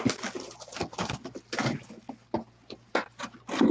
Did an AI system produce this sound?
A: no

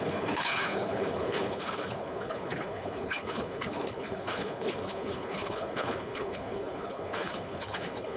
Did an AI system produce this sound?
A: yes